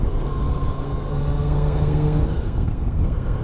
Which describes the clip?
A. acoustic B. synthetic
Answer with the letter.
B